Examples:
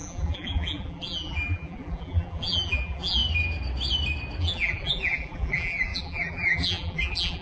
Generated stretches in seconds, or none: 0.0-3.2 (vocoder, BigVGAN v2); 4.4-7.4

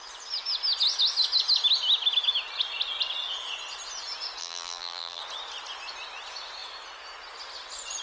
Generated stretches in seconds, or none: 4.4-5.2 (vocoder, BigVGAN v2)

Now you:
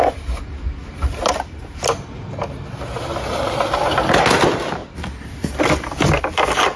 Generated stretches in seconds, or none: 4.8-6.2 (vocoder, BigVGAN v2)

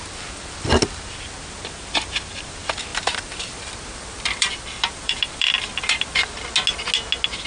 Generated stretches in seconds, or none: 2.9-6.2 (vocoder, BigVGAN v2)